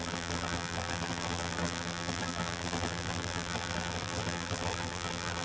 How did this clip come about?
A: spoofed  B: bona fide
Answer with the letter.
A